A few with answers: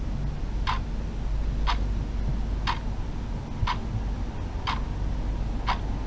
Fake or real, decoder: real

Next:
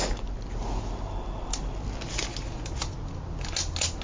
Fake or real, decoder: real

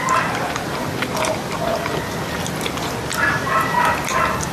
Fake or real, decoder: real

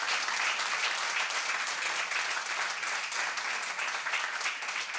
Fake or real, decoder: real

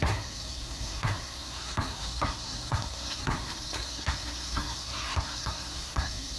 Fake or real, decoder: fake, codec, SNAC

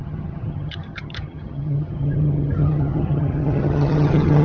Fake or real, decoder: fake, vocoder, HiFi-GAN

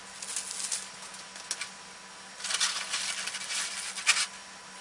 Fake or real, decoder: real